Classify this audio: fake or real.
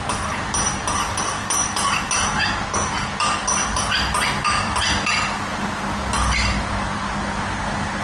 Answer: real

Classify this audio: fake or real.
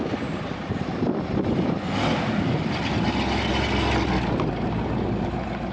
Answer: real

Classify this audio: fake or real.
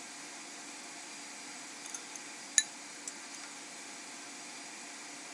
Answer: real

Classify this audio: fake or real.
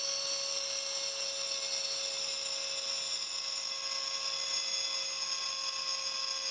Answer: real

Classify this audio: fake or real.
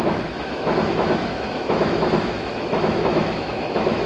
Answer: fake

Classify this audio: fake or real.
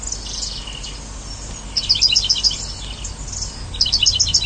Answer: real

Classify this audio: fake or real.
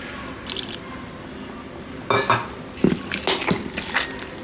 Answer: real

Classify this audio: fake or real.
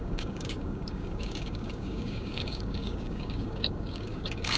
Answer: fake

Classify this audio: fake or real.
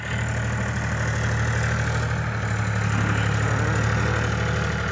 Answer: real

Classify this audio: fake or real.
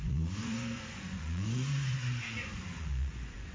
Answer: fake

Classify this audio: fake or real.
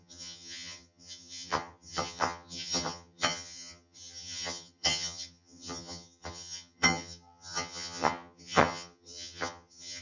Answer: fake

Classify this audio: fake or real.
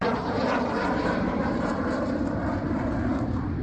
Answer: fake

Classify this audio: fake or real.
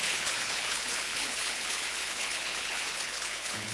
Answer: fake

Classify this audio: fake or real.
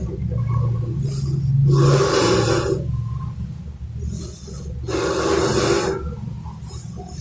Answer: real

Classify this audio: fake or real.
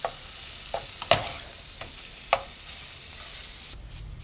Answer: real